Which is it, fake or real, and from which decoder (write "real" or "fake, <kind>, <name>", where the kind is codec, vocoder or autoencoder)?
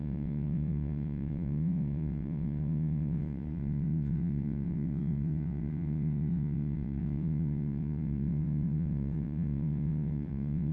fake, vocoder, WaveNeXt